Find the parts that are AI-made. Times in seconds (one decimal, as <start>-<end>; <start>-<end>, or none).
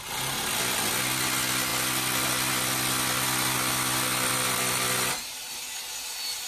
none